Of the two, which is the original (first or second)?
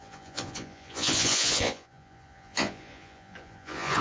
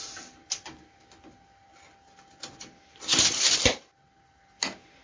second